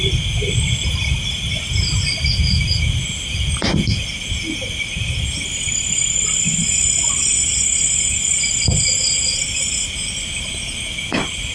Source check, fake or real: real